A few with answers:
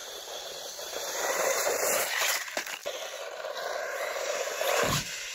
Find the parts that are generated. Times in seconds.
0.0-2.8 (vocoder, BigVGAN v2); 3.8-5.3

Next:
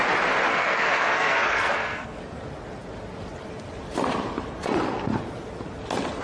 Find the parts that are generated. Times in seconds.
0.5-2.2 (codec, SNAC)

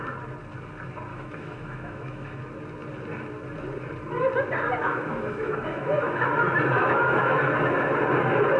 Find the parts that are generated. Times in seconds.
1.1-2.4 (autoencoder, DAC-VAE); 4.8-6.3; 6.8-7.4

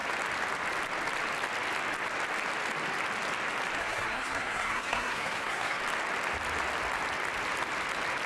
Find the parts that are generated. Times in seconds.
3.8-5.8 (codec, SNAC)

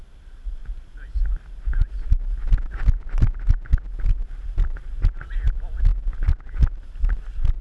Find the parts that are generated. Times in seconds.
4.2-5.4 (vocoder, BigVGAN v2)

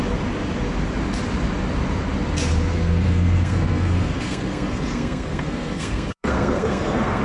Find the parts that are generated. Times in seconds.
2.7-7.2 (codec, SNAC)